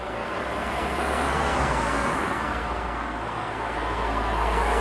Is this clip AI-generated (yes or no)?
yes